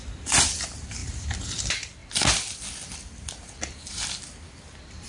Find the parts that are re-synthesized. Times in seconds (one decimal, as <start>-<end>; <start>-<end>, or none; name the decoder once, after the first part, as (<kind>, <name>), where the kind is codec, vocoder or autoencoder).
none